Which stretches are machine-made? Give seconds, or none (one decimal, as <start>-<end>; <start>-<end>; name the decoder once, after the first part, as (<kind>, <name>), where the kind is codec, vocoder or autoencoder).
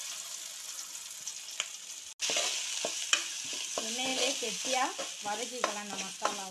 none